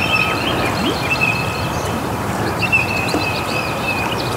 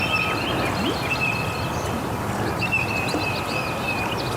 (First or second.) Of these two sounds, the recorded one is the second